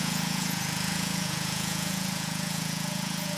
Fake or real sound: fake